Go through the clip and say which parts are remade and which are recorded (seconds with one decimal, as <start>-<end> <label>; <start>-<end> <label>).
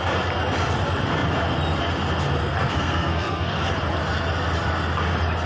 0.0-2.4 recorded; 2.4-3.7 remade; 3.7-5.5 recorded